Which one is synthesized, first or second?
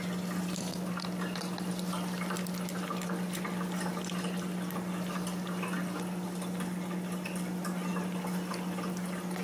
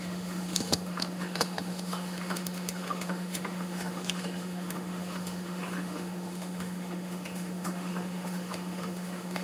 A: second